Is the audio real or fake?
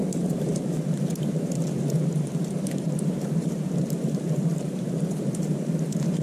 fake